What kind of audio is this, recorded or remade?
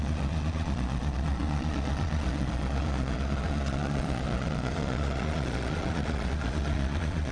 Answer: remade